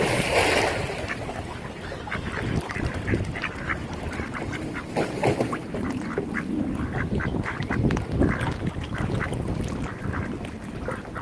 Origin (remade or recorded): recorded